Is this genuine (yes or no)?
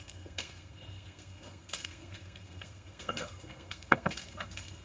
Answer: no